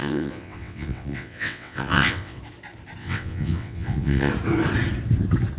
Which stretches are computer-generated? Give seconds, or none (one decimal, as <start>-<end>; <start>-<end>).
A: 0.0-2.4; 3.0-4.3